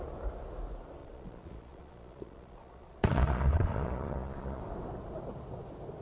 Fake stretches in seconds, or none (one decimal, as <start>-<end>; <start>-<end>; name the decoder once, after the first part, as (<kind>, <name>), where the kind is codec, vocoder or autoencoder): 1.0-4.6 (vocoder, Vocos)